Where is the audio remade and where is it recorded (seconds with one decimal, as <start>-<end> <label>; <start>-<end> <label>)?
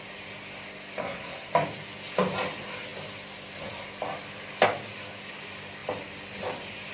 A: 0.0-1.0 recorded; 1.0-1.5 remade; 1.5-6.9 recorded